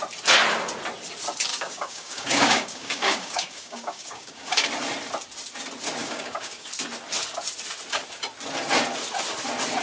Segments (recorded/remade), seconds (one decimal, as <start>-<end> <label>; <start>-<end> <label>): 0.0-1.5 recorded; 1.5-4.7 remade; 4.7-6.0 recorded; 6.0-6.7 remade; 6.7-9.8 recorded